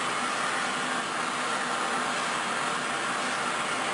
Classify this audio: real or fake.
real